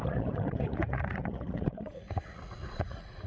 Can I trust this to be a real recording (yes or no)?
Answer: no